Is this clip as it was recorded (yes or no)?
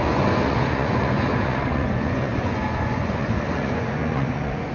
no